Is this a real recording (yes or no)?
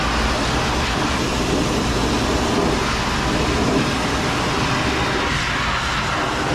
yes